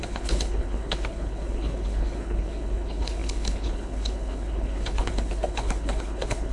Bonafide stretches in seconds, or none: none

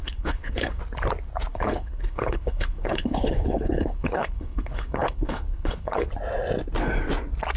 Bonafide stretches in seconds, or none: 0.8-1.5; 6.1-7.6

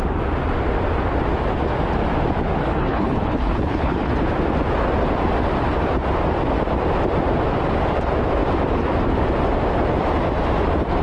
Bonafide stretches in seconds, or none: 0.0-2.6; 4.1-11.0

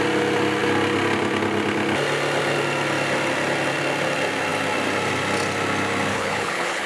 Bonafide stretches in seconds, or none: 0.0-6.1

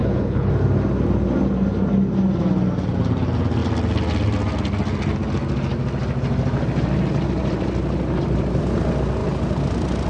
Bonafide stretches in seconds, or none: 0.5-10.1